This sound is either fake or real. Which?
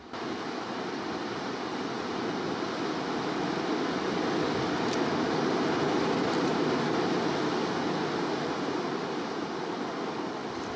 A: real